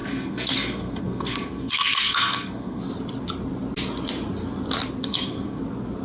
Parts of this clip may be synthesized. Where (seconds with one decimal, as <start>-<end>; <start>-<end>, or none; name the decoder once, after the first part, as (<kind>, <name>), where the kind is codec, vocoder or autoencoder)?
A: 0.0-2.8 (codec, SNAC); 5.0-5.6